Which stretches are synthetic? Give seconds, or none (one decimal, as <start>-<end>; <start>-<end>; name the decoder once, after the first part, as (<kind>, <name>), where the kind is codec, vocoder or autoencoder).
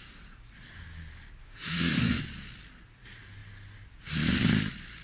1.4-2.2 (autoencoder, DAC-VAE)